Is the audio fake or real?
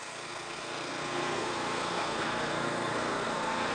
fake